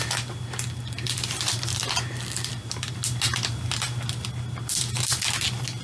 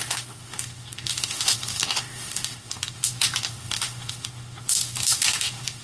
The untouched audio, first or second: first